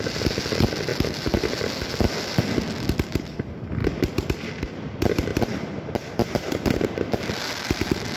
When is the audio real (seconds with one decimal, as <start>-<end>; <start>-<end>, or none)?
0.0-8.2